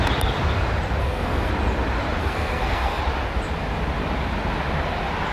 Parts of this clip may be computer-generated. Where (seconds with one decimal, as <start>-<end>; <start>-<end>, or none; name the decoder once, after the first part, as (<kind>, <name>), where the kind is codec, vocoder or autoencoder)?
1.0-1.5 (codec, SNAC); 2.2-3.0

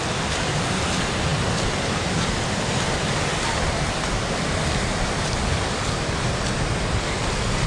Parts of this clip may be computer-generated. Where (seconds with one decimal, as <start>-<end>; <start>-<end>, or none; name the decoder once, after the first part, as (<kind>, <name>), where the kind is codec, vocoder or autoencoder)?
none

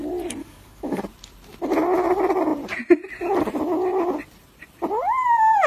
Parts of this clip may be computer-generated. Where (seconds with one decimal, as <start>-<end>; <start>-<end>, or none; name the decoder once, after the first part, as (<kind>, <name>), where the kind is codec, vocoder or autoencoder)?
0.4-1.0 (codec, DAC)

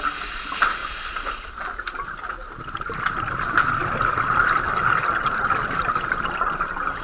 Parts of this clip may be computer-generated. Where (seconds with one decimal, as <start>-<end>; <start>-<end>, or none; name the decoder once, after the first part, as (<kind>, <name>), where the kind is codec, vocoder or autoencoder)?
0.8-2.6 (vocoder, BigVGAN v2)

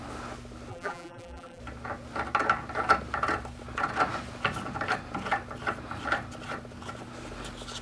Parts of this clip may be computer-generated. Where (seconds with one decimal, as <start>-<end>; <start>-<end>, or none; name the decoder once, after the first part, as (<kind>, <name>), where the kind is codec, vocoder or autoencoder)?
0.7-1.6 (vocoder, BigVGAN v2)